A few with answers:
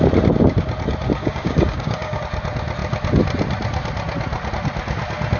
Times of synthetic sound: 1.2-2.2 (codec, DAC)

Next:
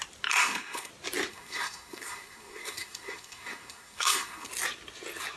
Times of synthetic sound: 0.4-0.9 (codec, SNAC); 1.3-4.5

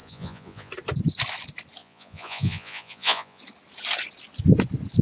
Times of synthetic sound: 0.0-0.7 (vocoder, Vocos); 1.8-3.4

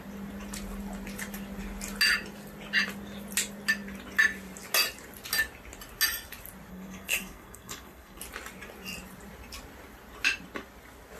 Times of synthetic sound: 6.7-8.2 (codec, SNAC)